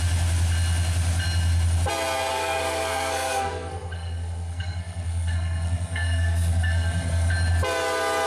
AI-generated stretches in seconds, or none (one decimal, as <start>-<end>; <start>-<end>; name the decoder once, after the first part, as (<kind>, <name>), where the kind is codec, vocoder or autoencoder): 2.3-7.3 (codec, SNAC)